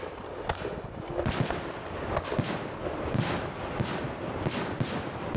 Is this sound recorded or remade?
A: recorded